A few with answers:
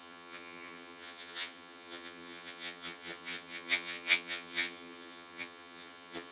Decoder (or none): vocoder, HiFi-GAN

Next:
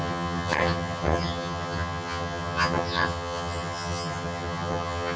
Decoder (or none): vocoder, HiFi-GAN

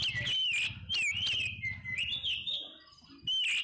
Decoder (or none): none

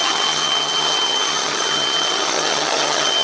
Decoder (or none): vocoder, HiFi-GAN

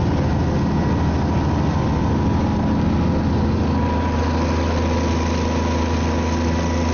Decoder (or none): none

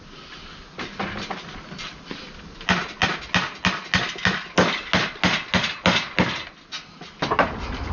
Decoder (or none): none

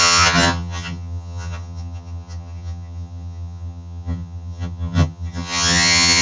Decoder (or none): vocoder, HiFi-GAN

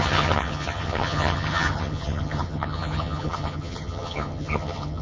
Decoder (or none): vocoder, HiFi-GAN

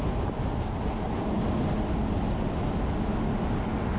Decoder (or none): none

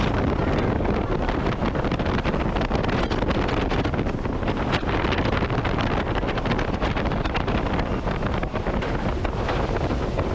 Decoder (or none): none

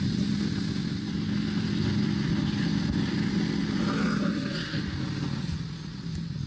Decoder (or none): none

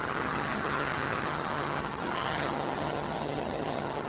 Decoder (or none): vocoder, HiFi-GAN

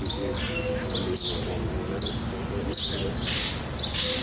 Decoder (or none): none